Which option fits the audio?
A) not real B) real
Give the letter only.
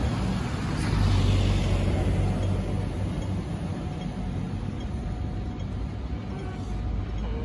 B